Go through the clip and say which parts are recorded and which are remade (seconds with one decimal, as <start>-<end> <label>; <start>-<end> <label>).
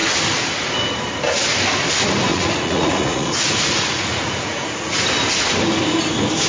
0.0-2.3 recorded; 2.3-5.0 remade; 5.0-6.5 recorded